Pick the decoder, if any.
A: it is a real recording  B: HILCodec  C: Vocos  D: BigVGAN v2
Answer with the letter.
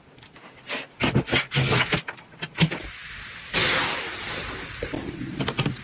A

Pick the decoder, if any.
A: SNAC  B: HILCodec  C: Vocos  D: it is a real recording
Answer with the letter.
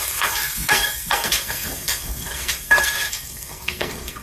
A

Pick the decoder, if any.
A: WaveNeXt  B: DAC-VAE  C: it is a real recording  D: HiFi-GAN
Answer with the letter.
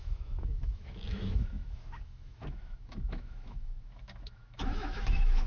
B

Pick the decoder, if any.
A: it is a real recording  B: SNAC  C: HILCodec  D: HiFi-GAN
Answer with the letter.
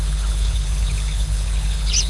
C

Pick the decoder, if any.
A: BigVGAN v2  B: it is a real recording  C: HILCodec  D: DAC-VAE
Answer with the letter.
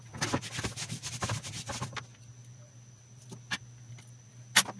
B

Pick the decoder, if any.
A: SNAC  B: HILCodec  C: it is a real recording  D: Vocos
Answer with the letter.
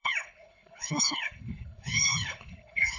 B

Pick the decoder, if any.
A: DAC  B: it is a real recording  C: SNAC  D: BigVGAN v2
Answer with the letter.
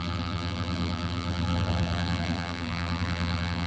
D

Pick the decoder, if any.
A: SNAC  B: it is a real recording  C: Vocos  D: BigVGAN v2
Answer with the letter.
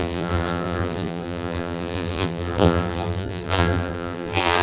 D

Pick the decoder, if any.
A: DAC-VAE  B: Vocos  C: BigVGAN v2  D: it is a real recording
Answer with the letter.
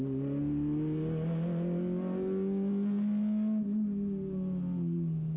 D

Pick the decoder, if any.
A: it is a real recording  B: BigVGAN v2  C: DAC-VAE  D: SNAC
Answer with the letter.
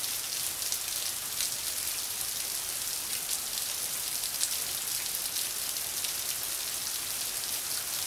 A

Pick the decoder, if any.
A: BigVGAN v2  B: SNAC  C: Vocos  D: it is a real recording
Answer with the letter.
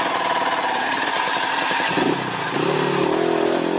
D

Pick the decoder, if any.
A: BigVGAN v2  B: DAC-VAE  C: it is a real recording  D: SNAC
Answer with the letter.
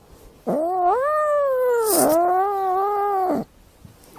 C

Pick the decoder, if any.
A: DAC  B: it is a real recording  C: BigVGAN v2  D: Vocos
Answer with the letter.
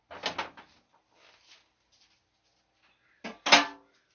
B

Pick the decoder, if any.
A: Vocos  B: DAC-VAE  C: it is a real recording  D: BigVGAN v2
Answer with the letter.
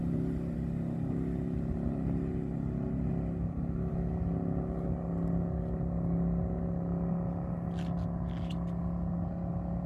C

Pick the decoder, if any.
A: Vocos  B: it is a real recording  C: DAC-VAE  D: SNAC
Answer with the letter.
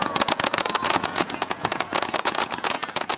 A